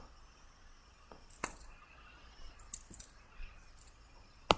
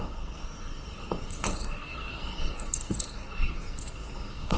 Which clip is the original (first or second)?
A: first